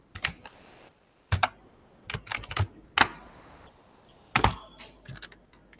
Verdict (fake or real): real